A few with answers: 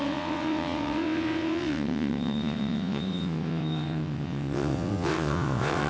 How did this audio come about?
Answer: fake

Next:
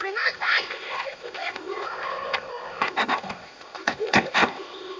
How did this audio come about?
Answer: fake